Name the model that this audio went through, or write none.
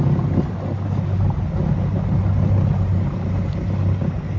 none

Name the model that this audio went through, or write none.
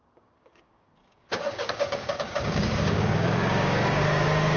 codec, DAC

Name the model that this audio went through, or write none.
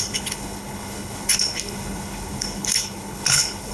codec, HILCodec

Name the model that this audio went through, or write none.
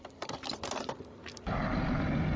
none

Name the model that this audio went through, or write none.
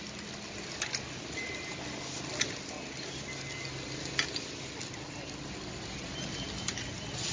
none